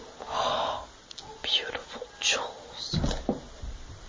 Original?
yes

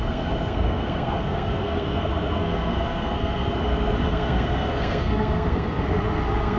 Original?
no